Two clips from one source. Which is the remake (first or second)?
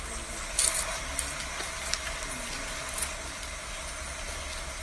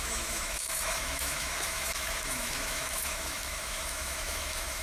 second